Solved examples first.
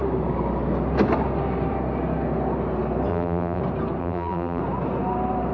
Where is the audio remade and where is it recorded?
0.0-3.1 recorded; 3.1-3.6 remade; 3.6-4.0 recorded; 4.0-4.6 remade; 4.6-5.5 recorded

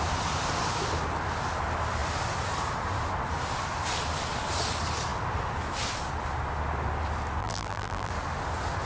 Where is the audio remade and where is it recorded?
0.0-7.4 recorded; 7.4-8.1 remade; 8.1-8.8 recorded

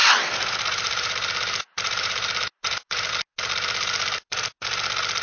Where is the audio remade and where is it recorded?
0.0-3.1 remade; 3.1-5.2 recorded

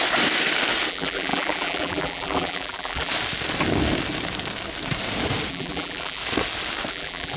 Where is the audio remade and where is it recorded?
0.0-0.9 recorded; 0.9-3.1 remade; 3.1-5.5 recorded; 5.5-6.2 remade; 6.2-6.9 recorded; 6.9-7.4 remade

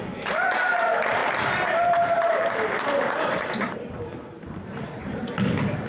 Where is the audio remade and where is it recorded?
0.0-5.9 remade

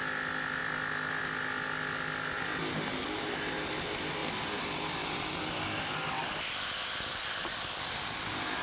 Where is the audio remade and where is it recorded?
0.0-4.2 recorded; 4.2-5.4 remade; 5.4-8.6 recorded

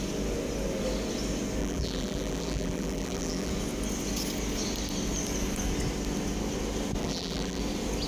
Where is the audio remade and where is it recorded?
0.0-1.6 recorded; 1.6-3.5 remade; 3.5-7.0 recorded; 7.0-7.6 remade; 7.6-8.1 recorded